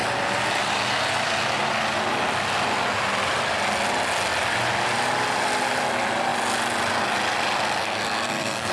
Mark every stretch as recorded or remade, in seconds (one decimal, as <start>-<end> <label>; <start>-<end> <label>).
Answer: 0.0-7.8 recorded; 7.8-8.7 remade